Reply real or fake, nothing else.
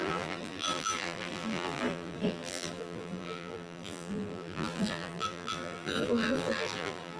fake